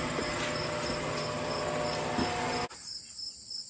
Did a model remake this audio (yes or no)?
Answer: no